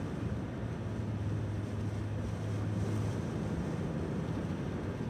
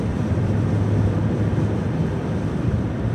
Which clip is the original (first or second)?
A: first